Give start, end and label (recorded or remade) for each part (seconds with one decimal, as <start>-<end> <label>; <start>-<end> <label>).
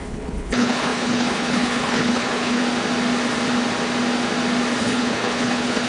0.0-2.6 remade; 2.6-4.8 recorded; 4.8-5.9 remade